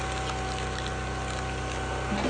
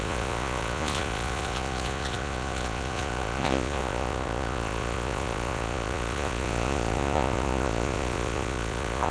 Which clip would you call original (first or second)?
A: first